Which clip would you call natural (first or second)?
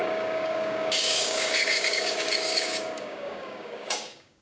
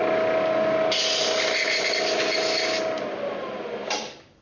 second